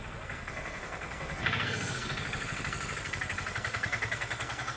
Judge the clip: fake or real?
fake